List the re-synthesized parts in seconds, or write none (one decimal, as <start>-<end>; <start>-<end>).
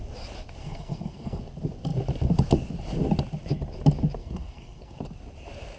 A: 0.6-1.4; 4.2-5.0